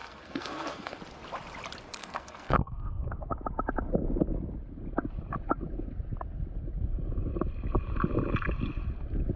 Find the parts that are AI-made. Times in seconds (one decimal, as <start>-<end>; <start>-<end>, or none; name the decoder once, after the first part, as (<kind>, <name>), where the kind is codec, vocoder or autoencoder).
0.0-1.0 (codec, SNAC); 2.0-3.1